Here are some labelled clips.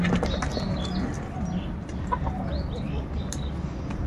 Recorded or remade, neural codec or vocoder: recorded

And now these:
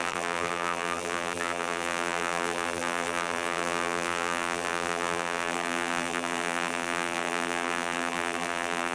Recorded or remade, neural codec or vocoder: remade, vocoder, BigVGAN v2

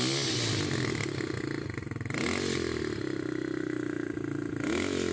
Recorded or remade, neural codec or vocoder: recorded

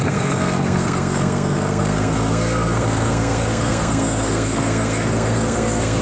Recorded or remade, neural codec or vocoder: remade, codec, SNAC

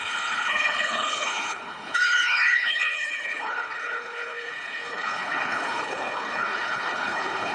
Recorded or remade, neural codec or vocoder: remade, codec, HILCodec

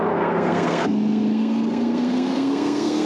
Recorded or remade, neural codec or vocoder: remade, codec, SNAC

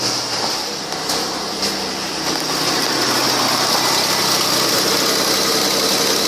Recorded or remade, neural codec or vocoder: recorded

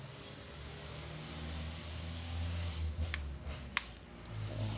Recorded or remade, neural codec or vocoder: recorded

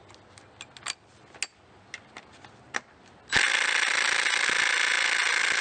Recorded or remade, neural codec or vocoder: recorded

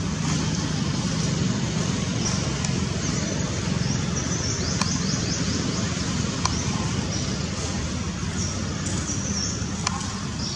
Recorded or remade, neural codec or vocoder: recorded